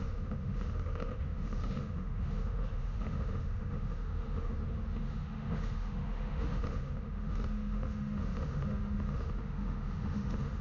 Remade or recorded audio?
remade